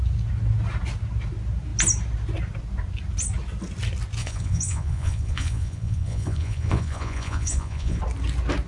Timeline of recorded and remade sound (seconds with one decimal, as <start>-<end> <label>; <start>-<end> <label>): 0.0-4.2 recorded; 4.2-8.0 remade; 8.0-8.7 recorded